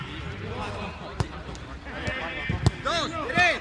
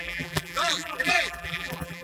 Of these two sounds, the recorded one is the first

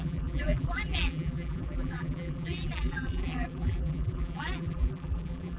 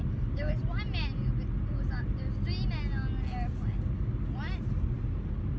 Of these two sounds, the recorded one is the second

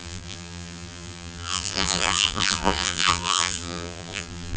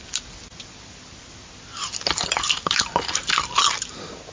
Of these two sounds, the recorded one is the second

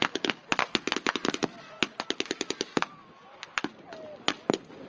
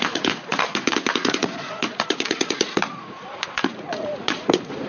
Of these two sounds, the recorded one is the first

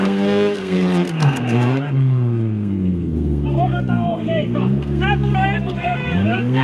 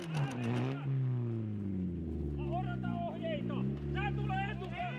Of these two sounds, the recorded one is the second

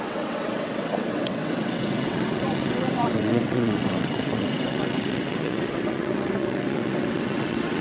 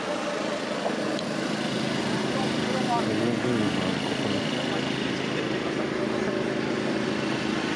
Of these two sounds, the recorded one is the second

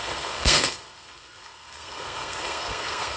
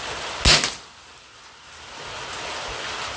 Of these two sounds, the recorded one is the second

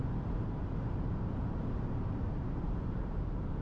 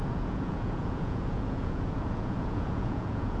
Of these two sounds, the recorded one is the first